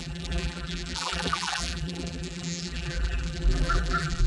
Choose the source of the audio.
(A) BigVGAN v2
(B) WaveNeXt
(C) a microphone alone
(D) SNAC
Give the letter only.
A